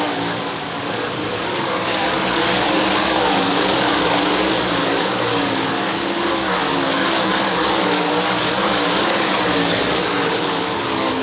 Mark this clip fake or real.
fake